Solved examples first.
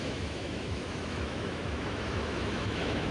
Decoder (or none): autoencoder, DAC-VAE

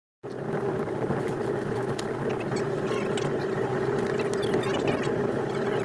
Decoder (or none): none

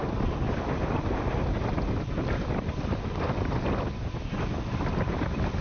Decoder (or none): none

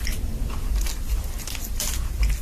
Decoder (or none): none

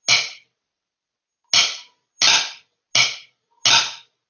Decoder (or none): none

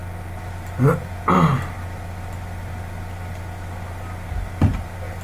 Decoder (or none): none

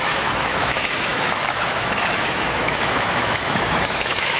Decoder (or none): autoencoder, DAC-VAE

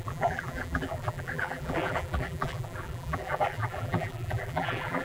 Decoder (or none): vocoder, BigVGAN v2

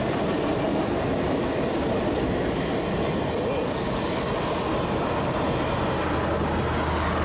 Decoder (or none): none